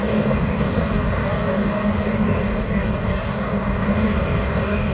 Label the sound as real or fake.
fake